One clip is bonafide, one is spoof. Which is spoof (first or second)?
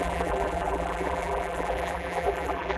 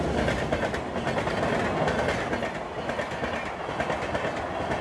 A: first